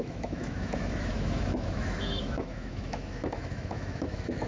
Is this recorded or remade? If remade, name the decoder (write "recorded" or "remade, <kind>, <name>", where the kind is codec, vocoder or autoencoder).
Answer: remade, autoencoder, DAC-VAE